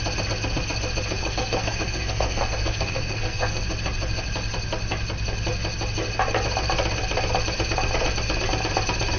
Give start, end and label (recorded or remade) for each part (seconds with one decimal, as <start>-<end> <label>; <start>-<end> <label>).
0.0-1.2 recorded; 1.2-3.6 remade; 3.6-9.2 recorded